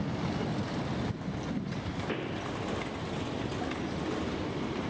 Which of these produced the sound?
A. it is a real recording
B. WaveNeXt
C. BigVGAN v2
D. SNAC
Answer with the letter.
A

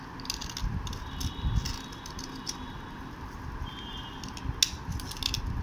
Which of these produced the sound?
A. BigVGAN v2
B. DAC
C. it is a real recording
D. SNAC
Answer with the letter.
C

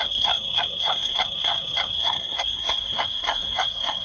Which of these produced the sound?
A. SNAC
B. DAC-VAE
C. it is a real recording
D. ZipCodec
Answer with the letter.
A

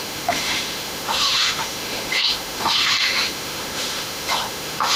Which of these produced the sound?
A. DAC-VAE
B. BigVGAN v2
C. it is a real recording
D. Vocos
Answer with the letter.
A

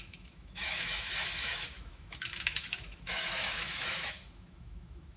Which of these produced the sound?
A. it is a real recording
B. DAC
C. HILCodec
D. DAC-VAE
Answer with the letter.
D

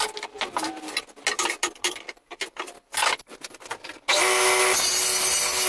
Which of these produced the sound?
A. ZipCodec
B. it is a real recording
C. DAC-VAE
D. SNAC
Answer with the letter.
B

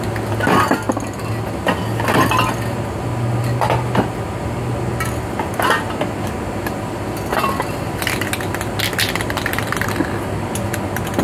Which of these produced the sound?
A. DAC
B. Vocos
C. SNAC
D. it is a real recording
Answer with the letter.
D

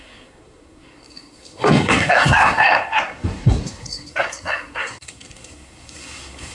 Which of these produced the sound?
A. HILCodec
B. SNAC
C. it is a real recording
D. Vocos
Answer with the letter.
B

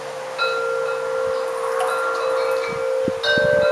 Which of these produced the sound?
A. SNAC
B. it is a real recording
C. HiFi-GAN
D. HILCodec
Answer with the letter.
B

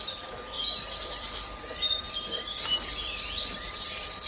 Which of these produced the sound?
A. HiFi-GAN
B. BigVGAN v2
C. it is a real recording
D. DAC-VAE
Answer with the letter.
B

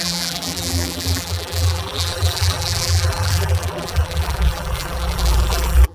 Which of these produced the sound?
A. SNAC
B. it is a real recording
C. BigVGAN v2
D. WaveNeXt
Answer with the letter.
C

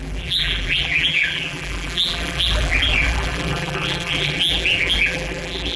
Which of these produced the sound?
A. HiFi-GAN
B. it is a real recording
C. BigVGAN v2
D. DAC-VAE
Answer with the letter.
C